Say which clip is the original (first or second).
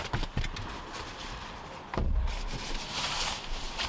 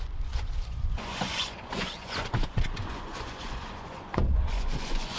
first